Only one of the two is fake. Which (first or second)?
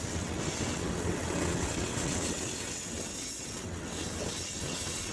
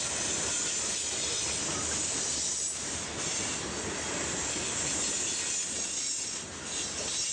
first